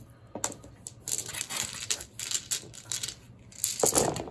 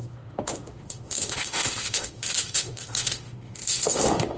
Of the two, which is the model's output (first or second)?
second